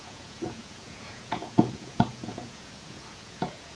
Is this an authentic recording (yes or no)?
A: no